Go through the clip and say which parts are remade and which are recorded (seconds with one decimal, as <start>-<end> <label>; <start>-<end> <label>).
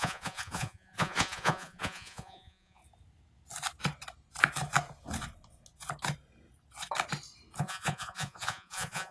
0.0-2.8 remade; 2.8-7.6 recorded; 7.6-9.1 remade